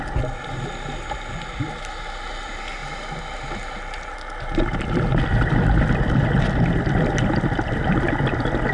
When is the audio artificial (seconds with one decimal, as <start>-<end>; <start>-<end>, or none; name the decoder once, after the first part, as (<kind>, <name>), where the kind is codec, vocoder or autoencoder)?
none